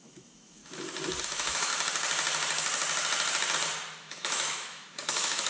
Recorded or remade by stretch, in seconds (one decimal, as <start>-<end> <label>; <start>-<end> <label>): 0.0-0.6 remade; 0.6-1.2 recorded; 1.2-1.7 remade; 1.7-4.0 recorded; 4.0-5.5 remade